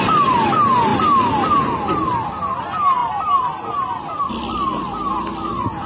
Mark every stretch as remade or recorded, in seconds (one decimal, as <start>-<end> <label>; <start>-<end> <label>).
0.0-3.0 recorded; 3.0-4.3 remade; 4.3-5.9 recorded